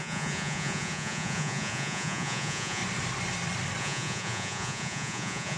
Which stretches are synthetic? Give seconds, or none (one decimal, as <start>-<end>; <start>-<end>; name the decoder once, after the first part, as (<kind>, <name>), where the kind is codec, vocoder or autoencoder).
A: 0.0-2.8 (vocoder, Vocos); 3.8-5.6